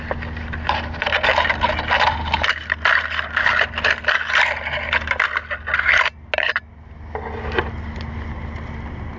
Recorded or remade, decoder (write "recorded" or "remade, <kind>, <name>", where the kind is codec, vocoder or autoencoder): recorded